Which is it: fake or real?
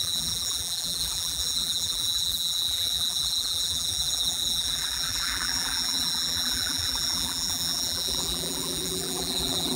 fake